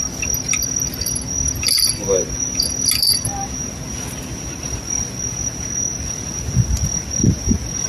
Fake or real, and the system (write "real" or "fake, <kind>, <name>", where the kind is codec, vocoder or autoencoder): real